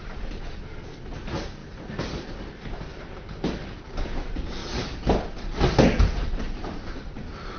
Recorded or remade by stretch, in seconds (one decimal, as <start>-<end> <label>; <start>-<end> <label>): 0.0-2.9 remade; 2.9-4.0 recorded; 4.0-4.6 remade; 4.6-6.0 recorded; 6.0-7.6 remade